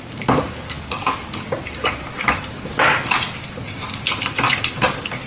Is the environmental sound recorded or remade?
recorded